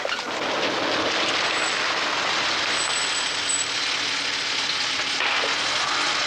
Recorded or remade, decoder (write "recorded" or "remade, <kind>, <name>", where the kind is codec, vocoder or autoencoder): recorded